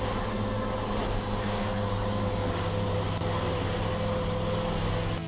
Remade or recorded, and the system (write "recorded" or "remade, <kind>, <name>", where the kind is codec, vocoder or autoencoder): recorded